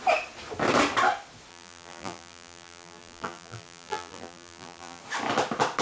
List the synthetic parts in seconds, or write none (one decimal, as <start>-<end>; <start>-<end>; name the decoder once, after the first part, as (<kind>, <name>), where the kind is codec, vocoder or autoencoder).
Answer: 1.5-5.0 (vocoder, BigVGAN v2)